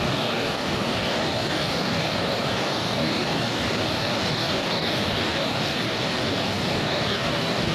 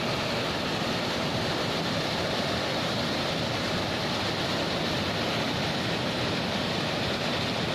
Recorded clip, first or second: second